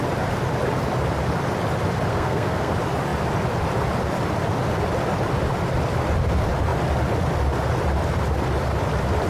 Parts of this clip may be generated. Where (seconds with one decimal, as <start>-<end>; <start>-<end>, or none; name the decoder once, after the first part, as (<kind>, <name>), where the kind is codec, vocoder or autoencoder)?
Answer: 2.1-2.7 (codec, SNAC)